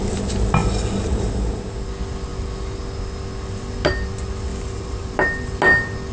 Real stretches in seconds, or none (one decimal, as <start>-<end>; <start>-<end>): 0.0-4.5; 5.1-6.1